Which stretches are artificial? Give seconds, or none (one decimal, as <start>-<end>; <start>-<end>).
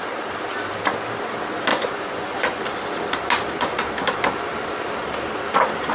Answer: 1.7-2.6